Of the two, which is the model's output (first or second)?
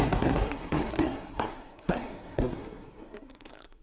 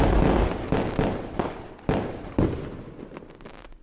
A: first